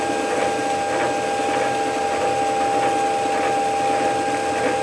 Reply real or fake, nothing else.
real